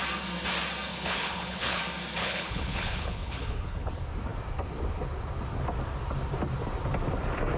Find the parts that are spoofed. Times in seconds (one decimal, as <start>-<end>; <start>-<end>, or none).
0.9-1.8; 2.2-3.9